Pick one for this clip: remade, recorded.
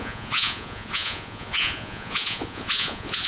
remade